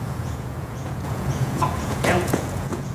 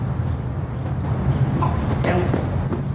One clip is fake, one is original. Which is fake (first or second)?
first